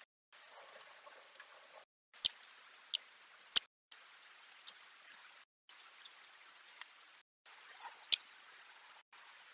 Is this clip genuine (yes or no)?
yes